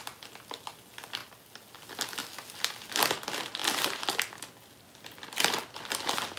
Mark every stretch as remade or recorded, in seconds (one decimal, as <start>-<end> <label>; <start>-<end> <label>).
0.0-6.4 recorded